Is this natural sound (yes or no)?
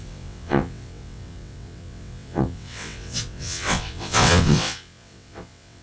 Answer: no